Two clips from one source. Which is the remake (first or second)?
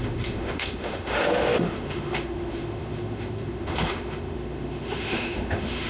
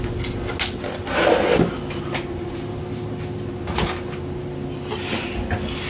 first